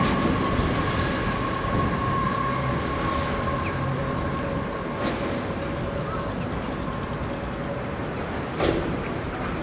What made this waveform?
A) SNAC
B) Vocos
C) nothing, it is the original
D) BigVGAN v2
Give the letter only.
C